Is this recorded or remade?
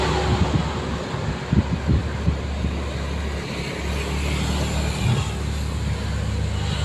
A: recorded